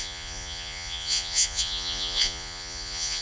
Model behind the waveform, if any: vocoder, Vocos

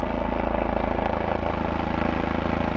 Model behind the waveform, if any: none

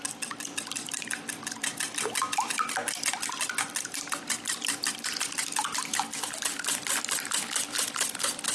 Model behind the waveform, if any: none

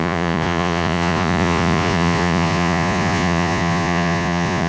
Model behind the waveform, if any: vocoder, Vocos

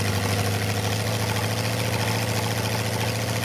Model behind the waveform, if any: none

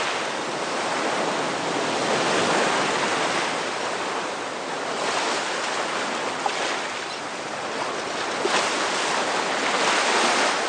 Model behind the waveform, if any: none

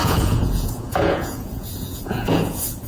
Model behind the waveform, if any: vocoder, Vocos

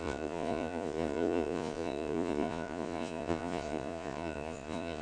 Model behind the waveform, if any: vocoder, Vocos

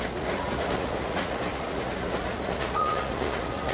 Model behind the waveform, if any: vocoder, Vocos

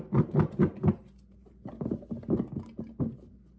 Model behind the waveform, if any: none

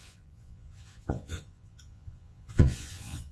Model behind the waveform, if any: vocoder, Vocos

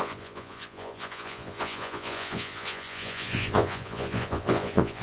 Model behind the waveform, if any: vocoder, Vocos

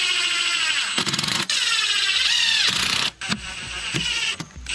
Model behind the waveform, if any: vocoder, Vocos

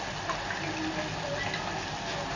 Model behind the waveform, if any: none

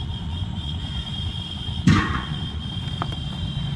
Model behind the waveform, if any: vocoder, Vocos